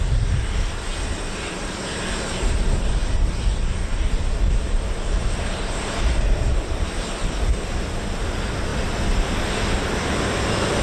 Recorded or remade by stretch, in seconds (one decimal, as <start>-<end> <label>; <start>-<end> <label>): 0.0-1.6 recorded; 1.6-2.3 remade; 2.3-10.8 recorded